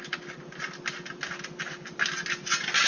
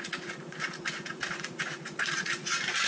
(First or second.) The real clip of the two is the first